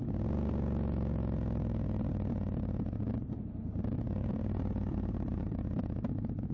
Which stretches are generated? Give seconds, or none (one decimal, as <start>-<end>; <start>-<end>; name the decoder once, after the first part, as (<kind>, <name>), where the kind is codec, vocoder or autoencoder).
4.2-5.4 (vocoder, BigVGAN v2)